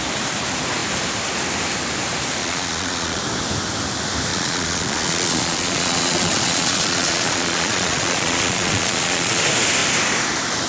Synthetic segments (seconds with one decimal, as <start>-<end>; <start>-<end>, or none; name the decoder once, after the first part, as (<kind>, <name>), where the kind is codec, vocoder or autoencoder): 2.4-3.2 (vocoder, Vocos); 4.3-9.4